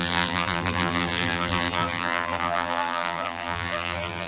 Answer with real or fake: fake